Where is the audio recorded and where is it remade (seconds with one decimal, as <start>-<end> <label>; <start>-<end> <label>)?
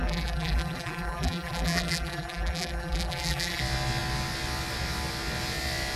0.0-3.6 remade; 3.6-6.0 recorded